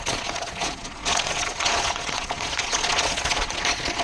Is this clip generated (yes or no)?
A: yes